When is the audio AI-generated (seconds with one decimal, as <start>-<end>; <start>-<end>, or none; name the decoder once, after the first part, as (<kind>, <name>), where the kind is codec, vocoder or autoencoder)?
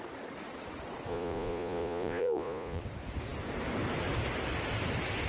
1.1-2.8 (vocoder, Vocos)